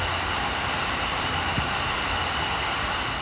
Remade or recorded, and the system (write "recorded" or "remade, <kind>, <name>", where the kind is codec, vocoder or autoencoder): recorded